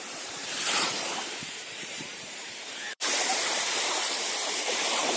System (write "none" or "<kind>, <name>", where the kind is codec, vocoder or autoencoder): vocoder, BigVGAN v2